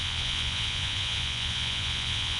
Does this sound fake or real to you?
fake